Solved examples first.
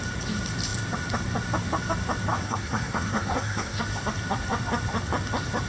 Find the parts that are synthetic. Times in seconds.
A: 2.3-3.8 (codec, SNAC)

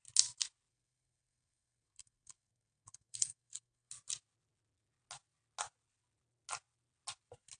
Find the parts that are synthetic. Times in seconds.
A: 0.7-3.9 (codec, SNAC)

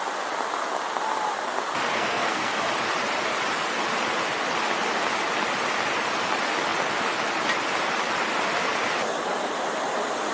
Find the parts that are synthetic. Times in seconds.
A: 1.9-2.7 (codec, SNAC)

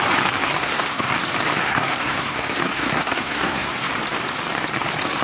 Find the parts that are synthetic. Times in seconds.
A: 0.6-1.1 (codec, SNAC); 1.6-3.9